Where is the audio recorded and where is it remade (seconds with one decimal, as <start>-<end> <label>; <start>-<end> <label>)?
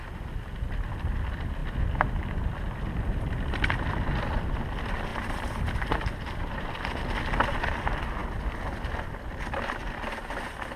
0.0-5.1 recorded; 5.1-6.7 remade; 6.7-10.8 recorded